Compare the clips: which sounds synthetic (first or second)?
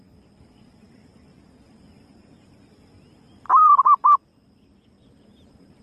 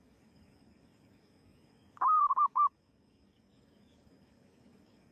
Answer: second